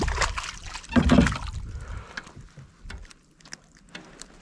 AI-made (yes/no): no